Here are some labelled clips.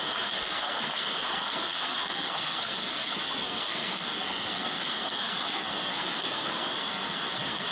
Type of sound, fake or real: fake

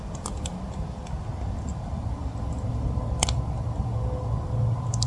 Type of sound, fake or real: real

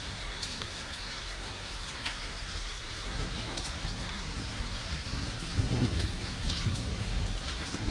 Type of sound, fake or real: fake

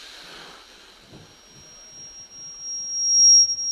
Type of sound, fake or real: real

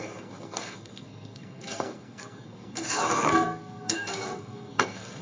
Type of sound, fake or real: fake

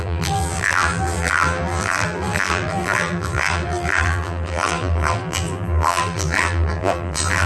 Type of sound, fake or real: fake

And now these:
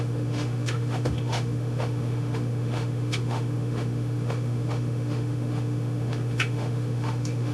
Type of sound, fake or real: fake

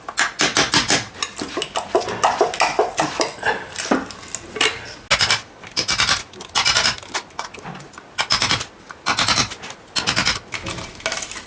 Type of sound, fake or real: real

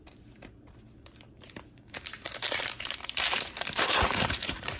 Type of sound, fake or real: fake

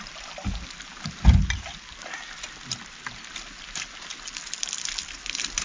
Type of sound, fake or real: real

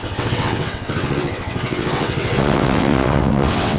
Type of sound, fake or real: fake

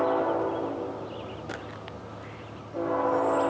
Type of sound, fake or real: real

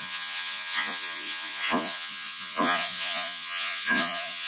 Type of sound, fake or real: fake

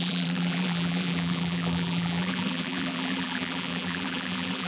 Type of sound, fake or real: fake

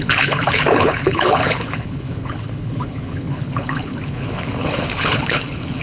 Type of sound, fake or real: fake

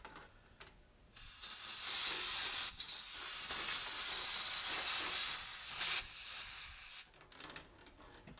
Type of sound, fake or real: real